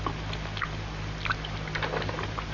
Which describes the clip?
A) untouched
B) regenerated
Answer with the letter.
A